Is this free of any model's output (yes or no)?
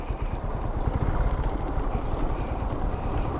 no